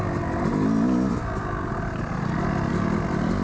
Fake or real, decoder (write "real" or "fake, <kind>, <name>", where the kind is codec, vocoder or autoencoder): real